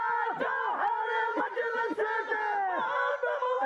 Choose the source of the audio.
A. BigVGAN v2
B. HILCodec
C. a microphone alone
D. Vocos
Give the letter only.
C